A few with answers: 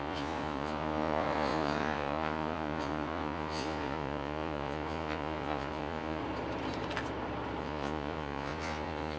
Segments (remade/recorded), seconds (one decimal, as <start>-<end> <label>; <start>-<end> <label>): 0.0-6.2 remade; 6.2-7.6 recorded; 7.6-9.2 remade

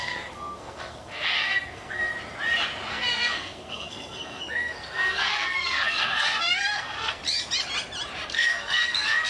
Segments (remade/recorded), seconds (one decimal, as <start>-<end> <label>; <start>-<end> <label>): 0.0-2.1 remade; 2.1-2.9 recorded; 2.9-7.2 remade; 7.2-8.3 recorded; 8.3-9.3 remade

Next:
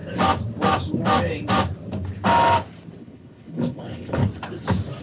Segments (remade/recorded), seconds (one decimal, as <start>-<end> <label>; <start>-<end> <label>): 0.0-3.0 recorded; 3.0-4.2 remade; 4.2-5.0 recorded

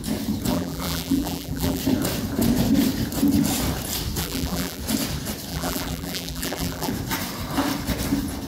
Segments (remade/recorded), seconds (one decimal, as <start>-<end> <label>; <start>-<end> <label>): 0.0-0.5 recorded; 0.5-1.8 remade; 1.8-4.2 recorded; 4.2-4.8 remade; 4.8-5.5 recorded; 5.5-6.9 remade; 6.9-8.5 recorded

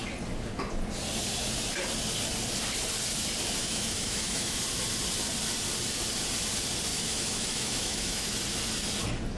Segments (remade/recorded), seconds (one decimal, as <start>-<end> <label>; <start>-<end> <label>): 0.0-3.6 recorded; 3.6-4.6 remade; 4.6-6.9 recorded; 6.9-8.3 remade; 8.3-9.4 recorded